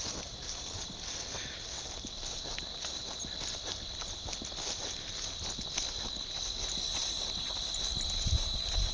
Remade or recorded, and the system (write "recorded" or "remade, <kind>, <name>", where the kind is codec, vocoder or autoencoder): recorded